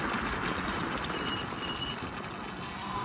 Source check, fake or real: real